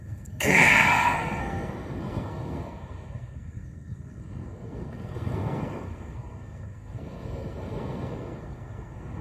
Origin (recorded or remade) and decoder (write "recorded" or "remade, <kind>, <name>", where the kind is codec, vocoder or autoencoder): remade, codec, SNAC